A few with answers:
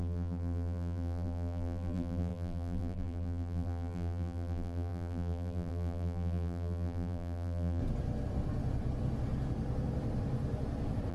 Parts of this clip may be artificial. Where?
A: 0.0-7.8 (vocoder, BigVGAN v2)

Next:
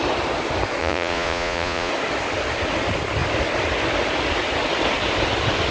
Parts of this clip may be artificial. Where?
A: 0.8-1.9 (vocoder, Vocos)

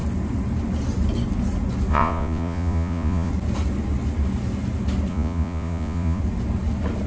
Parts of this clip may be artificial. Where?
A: 1.9-3.3 (vocoder, Vocos); 5.1-6.2